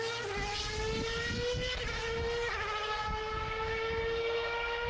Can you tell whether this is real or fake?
real